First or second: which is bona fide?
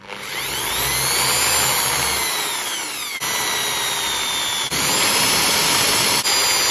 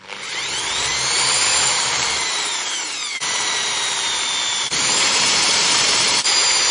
first